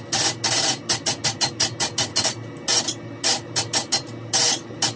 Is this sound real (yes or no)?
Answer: yes